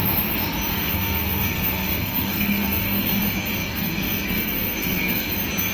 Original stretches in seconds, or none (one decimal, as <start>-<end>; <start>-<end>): 0.0-0.7; 3.2-3.6; 5.3-5.7